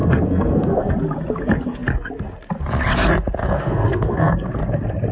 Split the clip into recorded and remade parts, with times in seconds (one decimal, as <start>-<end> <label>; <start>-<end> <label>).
0.0-0.9 remade; 0.9-3.4 recorded; 3.4-4.5 remade; 4.5-5.1 recorded